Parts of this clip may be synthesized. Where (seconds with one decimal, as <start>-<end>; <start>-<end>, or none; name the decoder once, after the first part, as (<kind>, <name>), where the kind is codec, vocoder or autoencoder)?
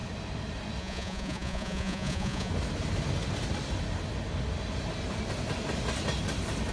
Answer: 0.8-2.5 (vocoder, Vocos)